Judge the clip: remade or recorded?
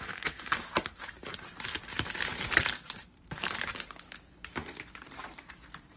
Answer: remade